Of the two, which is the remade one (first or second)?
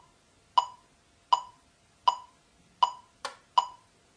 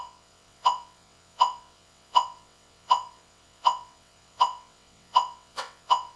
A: second